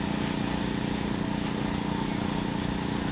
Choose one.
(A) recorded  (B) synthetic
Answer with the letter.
A